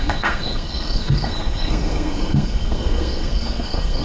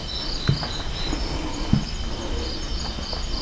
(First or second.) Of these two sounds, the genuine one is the second